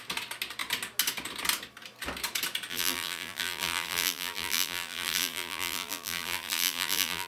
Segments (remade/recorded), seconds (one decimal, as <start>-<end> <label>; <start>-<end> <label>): 0.0-2.7 recorded; 2.7-7.3 remade